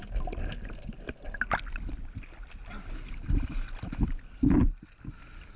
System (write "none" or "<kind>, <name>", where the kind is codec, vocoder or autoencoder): none